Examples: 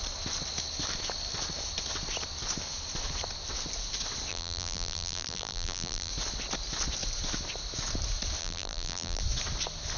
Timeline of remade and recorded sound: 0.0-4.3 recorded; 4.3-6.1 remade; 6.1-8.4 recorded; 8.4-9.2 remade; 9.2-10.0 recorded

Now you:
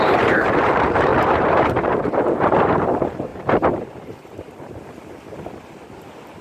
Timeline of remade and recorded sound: 0.0-3.3 remade; 3.3-6.4 recorded

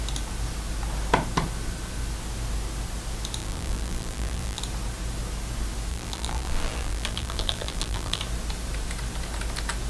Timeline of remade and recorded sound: 0.0-3.4 recorded; 3.4-4.6 remade; 4.6-5.9 recorded; 5.9-8.2 remade; 8.2-9.9 recorded

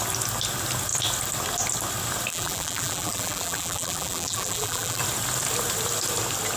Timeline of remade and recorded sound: 0.0-2.3 recorded; 2.3-5.0 remade; 5.0-6.6 recorded

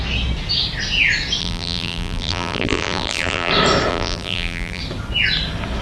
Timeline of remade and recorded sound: 0.0-1.4 recorded; 1.4-3.5 remade; 3.5-3.9 recorded; 3.9-4.8 remade; 4.8-5.8 recorded

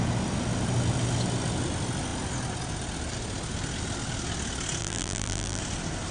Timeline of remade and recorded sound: 0.0-4.8 recorded; 4.8-5.6 remade; 5.6-6.1 recorded

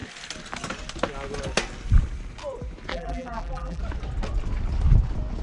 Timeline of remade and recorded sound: 0.0-2.9 recorded; 2.9-3.8 remade; 3.8-5.4 recorded

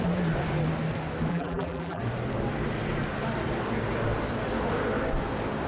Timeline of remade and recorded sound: 0.0-1.3 recorded; 1.3-2.0 remade; 2.0-5.7 recorded